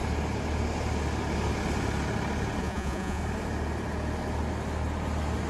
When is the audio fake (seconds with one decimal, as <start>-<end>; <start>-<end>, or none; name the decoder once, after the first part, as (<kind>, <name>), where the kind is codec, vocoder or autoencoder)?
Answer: 2.6-3.2 (vocoder, Vocos)